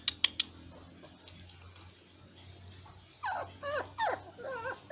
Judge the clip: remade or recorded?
recorded